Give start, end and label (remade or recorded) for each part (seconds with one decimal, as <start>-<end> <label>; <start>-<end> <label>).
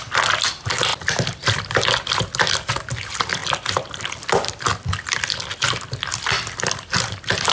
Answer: 0.0-7.5 recorded